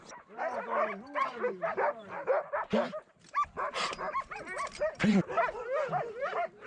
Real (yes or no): no